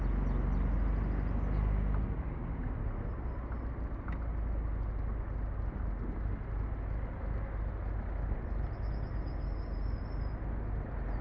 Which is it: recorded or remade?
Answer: recorded